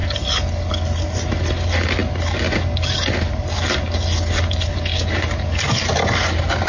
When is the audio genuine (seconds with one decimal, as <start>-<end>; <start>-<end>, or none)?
0.0-6.7